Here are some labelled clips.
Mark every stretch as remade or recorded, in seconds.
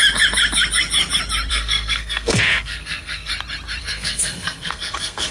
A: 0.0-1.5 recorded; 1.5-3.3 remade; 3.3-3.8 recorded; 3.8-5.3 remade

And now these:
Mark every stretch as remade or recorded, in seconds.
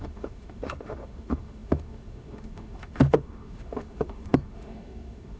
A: 0.0-5.4 remade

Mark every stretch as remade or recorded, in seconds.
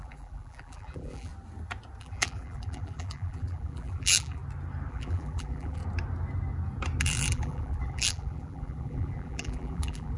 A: 0.0-1.3 remade; 1.3-2.0 recorded; 2.0-4.4 remade; 4.4-4.9 recorded; 4.9-5.8 remade; 5.8-7.0 recorded; 7.0-10.2 remade